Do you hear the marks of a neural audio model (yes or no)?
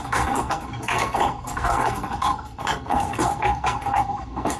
yes